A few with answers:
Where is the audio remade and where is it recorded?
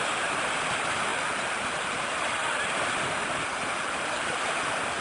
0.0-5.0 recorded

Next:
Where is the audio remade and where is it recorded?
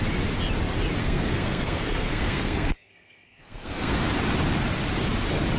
0.0-1.0 recorded; 1.0-3.9 remade; 3.9-5.6 recorded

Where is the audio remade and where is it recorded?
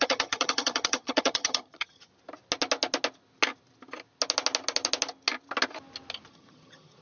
0.0-2.1 remade; 2.1-6.3 recorded; 6.3-7.0 remade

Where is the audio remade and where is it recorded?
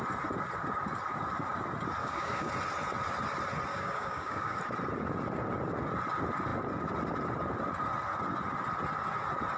0.0-2.0 recorded; 2.0-2.5 remade; 2.5-3.7 recorded; 3.7-4.6 remade; 4.6-9.6 recorded